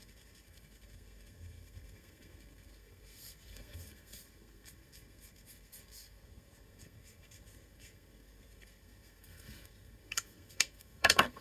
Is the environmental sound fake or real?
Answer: fake